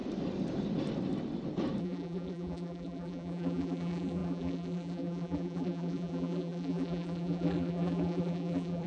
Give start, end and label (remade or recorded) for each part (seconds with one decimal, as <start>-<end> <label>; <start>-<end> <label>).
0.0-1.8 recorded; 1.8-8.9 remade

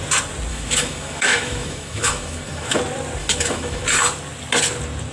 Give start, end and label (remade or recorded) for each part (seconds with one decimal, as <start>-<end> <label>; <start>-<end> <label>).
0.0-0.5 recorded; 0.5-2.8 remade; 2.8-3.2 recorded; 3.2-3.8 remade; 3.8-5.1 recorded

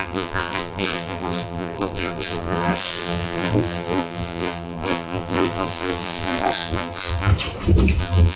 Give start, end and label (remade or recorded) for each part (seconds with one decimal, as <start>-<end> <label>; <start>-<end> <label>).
0.0-7.3 remade; 7.3-8.0 recorded; 8.0-8.4 remade

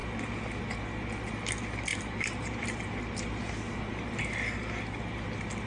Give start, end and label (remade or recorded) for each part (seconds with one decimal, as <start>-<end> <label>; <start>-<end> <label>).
0.0-1.9 recorded; 1.9-4.2 remade; 4.2-5.7 recorded